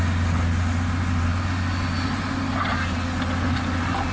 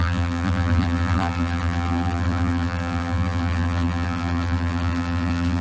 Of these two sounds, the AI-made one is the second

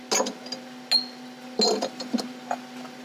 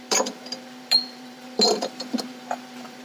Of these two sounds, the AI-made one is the second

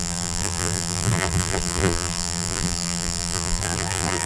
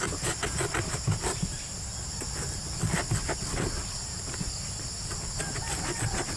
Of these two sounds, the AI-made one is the first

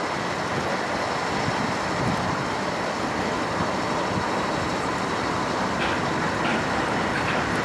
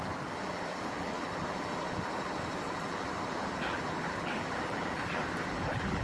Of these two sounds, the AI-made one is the second